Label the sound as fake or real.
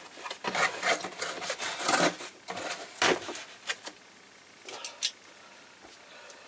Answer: real